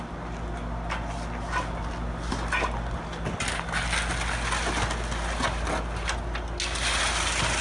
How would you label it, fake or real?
real